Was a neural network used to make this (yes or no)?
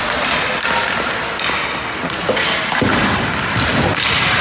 no